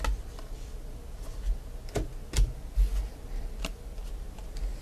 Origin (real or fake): real